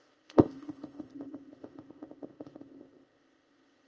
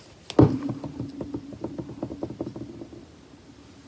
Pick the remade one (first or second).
first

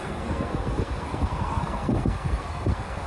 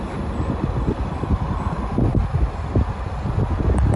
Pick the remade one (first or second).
first